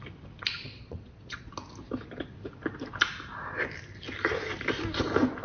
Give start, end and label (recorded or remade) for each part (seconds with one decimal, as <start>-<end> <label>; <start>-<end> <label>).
0.0-0.5 recorded; 0.5-1.5 remade; 1.5-5.4 recorded